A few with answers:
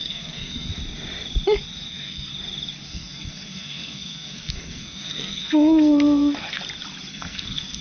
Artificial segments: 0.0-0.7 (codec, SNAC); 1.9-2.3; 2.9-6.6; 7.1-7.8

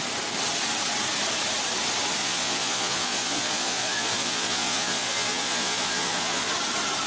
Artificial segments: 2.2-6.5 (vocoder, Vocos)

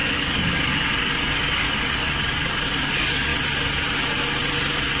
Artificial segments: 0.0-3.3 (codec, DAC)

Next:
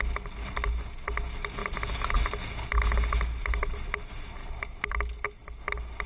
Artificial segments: none

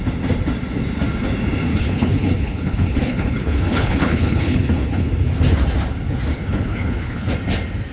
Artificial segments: 1.7-5.1 (codec, HILCodec); 6.3-7.3

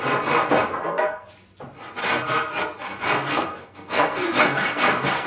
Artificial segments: 0.8-1.3 (codec, SNAC); 2.0-5.3

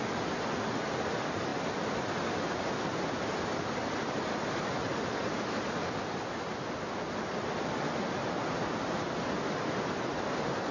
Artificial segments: none